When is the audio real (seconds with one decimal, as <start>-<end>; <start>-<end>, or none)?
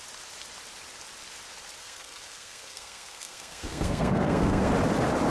0.0-1.8; 4.7-5.3